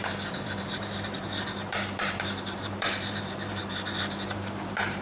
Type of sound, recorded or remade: remade